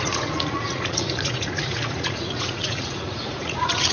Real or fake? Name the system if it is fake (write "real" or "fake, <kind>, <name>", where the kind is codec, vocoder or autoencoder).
fake, vocoder, Vocos